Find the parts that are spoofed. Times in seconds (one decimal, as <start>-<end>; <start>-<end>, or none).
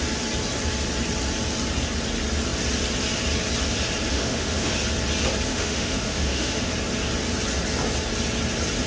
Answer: 4.1-4.7; 5.5-6.7